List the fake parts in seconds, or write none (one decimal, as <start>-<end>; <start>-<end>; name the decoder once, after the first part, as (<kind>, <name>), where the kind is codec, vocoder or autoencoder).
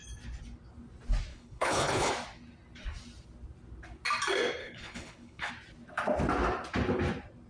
1.3-2.1 (codec, HILCodec); 4.6-5.5